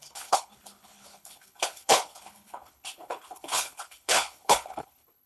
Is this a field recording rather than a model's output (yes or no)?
no